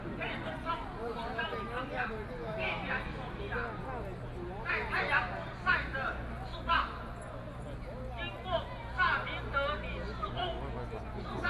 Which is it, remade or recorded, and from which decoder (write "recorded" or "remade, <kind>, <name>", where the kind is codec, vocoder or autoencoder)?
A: recorded